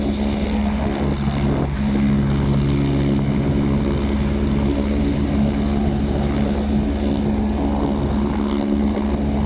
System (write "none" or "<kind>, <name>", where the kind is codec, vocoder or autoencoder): none